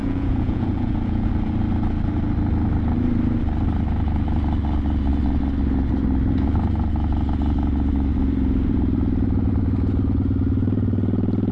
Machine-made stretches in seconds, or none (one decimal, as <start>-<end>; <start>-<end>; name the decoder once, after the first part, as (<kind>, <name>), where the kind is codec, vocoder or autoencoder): 0.0-1.3 (vocoder, Vocos)